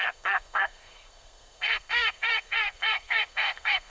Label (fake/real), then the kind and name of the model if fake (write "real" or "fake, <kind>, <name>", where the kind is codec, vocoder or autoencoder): fake, codec, SNAC